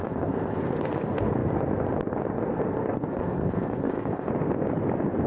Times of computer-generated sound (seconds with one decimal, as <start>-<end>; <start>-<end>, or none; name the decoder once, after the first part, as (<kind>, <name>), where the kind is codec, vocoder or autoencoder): 0.0-0.6 (codec, ZipCodec); 3.1-4.3